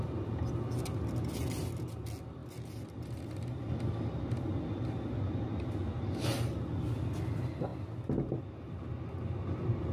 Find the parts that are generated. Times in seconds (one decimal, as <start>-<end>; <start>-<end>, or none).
none